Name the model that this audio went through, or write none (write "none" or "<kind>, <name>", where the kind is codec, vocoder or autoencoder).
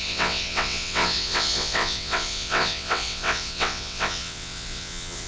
vocoder, WaveNeXt